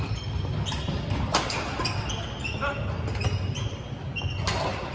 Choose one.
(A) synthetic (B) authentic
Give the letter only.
B